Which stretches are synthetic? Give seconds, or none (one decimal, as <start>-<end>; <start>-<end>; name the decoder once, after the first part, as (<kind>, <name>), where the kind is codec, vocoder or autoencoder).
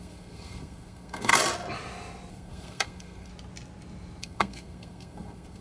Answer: 0.0-1.3 (codec, SNAC); 2.3-3.3; 4.2-5.6